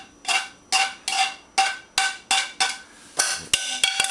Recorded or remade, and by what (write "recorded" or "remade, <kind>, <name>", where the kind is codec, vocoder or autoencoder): recorded